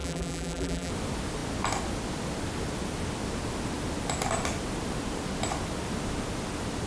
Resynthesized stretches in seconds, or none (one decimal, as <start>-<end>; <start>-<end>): 0.0-0.9